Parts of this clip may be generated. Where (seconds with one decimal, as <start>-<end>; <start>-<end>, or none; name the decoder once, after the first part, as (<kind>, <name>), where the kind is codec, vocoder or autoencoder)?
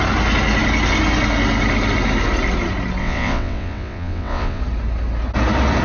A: 3.0-4.6 (vocoder, WaveNeXt)